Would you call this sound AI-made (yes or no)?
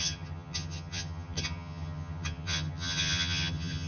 yes